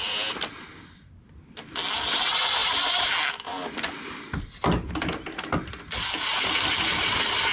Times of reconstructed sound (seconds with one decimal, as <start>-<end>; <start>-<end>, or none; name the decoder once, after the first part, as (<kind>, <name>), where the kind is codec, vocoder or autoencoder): none